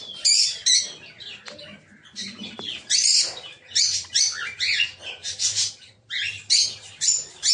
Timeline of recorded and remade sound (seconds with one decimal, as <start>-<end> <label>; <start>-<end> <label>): 0.0-7.5 recorded